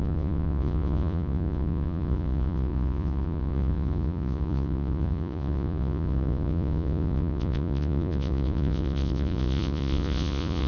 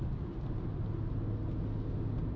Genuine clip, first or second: second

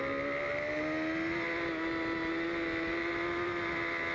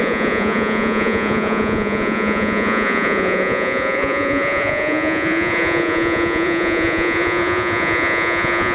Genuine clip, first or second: first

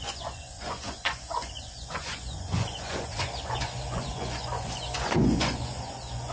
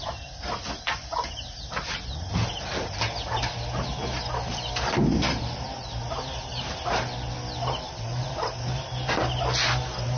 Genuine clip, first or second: second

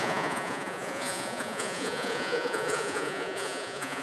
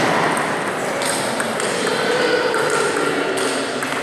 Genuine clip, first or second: second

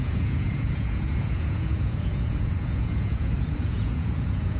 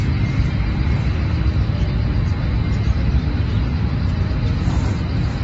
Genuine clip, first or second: second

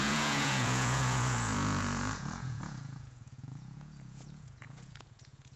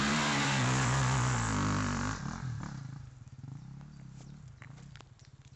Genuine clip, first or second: second